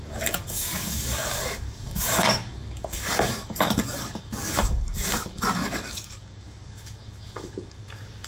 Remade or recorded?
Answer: remade